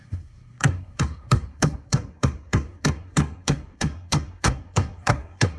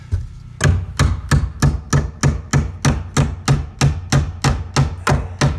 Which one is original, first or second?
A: second